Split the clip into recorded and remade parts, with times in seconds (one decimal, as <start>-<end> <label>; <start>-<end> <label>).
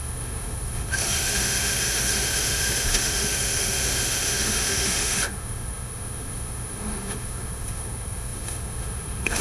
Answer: 0.0-9.4 remade